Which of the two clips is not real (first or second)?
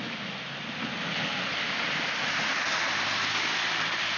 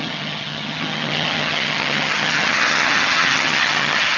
second